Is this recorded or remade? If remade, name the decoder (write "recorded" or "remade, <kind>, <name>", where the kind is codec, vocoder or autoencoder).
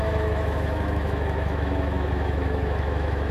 remade, autoencoder, DAC-VAE